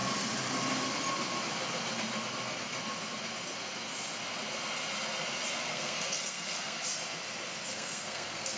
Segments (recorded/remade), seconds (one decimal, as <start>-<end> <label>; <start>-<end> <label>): 0.0-5.7 recorded; 5.7-6.8 remade; 6.8-7.7 recorded; 7.7-8.6 remade